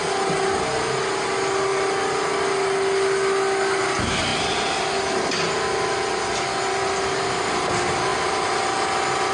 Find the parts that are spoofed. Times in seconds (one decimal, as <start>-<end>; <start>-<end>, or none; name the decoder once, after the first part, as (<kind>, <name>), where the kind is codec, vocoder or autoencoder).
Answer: none